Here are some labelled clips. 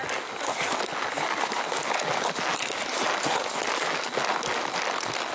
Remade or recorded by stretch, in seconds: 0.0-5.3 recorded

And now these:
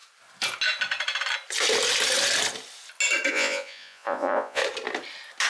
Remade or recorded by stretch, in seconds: 0.0-3.3 recorded; 3.3-4.6 remade; 4.6-5.5 recorded

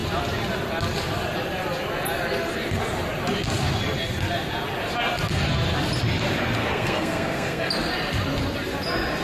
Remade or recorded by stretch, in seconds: 0.0-6.6 recorded; 6.6-7.7 remade; 7.7-9.2 recorded